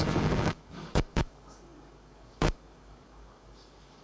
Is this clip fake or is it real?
fake